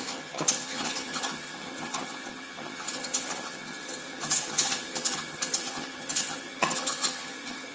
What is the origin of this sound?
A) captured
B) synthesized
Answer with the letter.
B